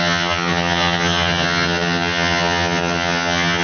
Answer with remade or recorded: remade